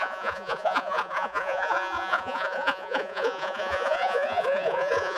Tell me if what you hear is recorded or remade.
remade